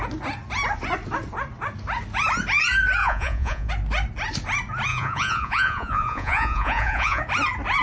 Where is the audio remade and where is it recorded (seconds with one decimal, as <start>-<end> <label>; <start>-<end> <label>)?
0.0-3.0 recorded; 3.0-3.7 remade; 3.7-4.9 recorded; 4.9-7.2 remade; 7.2-7.8 recorded